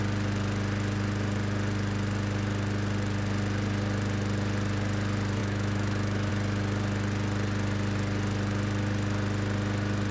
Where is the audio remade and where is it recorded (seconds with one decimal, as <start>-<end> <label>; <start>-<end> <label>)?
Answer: 0.0-5.4 recorded; 5.4-6.3 remade; 6.3-10.1 recorded